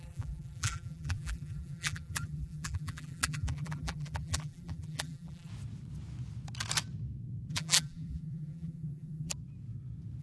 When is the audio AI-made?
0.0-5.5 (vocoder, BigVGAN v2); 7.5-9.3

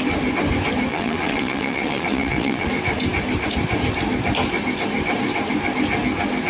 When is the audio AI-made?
0.9-2.7 (vocoder, WaveNeXt)

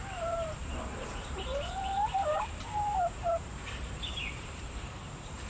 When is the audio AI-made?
0.0-5.5 (vocoder, BigVGAN v2)